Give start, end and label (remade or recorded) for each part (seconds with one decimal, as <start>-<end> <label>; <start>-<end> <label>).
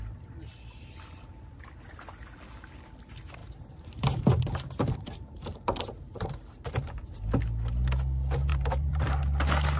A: 0.0-3.4 recorded; 3.4-7.0 remade; 7.0-8.5 recorded; 8.5-9.2 remade; 9.2-9.8 recorded